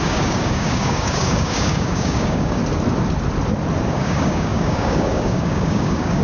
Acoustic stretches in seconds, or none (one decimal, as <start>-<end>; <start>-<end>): 2.6-3.9